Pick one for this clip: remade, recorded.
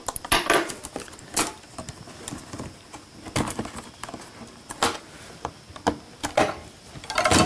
recorded